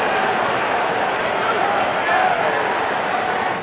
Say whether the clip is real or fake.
real